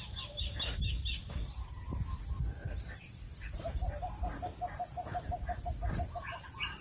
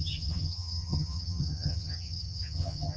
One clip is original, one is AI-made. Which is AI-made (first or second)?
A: second